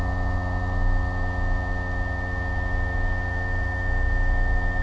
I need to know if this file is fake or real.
real